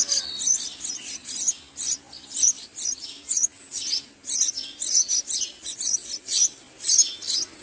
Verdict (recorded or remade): recorded